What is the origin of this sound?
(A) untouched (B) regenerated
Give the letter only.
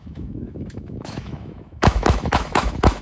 B